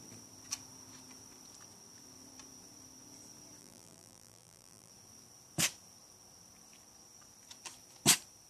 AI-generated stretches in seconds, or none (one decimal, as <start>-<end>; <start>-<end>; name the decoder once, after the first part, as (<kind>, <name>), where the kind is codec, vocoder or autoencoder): 3.6-4.9 (vocoder, BigVGAN v2)